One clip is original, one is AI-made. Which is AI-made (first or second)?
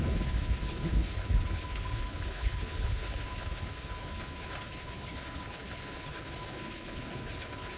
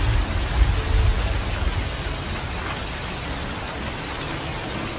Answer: first